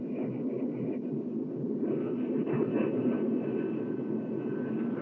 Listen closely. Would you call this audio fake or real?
real